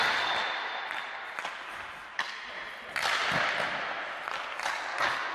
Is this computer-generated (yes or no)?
no